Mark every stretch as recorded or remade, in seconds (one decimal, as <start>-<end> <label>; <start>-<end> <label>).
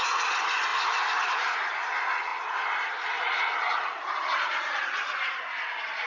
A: 0.0-0.7 recorded; 0.7-1.5 remade; 1.5-4.3 recorded; 4.3-5.6 remade; 5.6-6.1 recorded